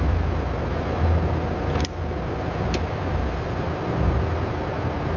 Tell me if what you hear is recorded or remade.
recorded